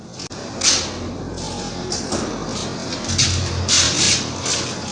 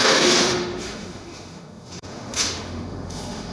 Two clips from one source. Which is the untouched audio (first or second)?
first